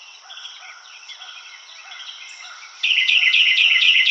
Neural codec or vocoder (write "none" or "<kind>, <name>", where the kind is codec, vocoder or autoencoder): vocoder, WaveNeXt